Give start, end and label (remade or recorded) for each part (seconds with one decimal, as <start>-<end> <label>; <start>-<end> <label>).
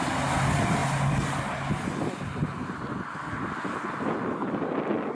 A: 0.0-5.1 recorded